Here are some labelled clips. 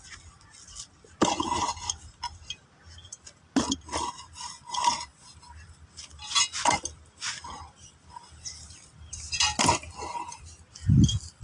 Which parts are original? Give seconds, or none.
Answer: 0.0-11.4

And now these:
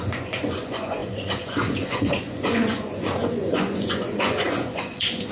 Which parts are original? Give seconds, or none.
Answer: none

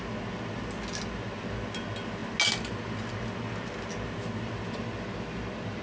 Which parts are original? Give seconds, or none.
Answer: 0.0-5.8

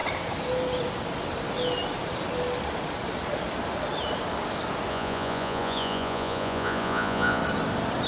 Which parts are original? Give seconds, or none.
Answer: 0.0-4.9; 7.4-8.1

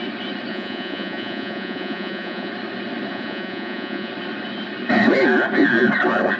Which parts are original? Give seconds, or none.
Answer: 0.0-0.5; 2.5-3.1; 4.1-6.4

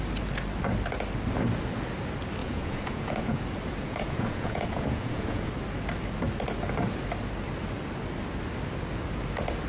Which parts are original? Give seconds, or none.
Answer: 0.0-2.4; 3.4-3.8; 5.5-9.7